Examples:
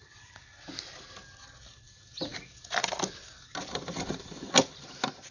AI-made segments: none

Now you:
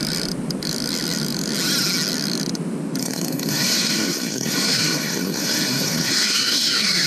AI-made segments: 3.0-7.1

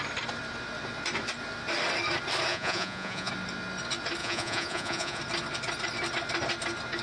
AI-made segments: 2.5-3.3; 4.2-5.2

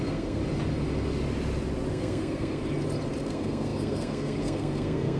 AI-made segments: 0.0-0.4; 1.9-2.6; 3.3-5.2

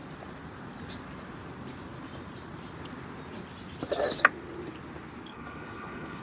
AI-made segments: 5.3-6.2

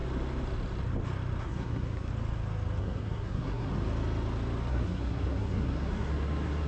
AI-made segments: 1.4-2.1; 2.8-3.7; 4.7-6.7